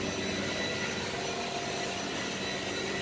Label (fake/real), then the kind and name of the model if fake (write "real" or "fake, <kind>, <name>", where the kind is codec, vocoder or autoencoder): real